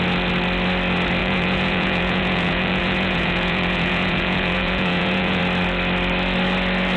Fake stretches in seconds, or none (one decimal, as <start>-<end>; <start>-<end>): 1.2-5.4